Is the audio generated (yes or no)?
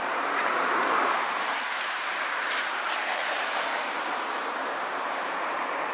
yes